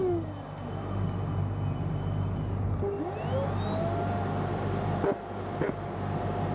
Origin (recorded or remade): recorded